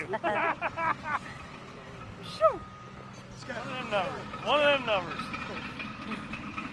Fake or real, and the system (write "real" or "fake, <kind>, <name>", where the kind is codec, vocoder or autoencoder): real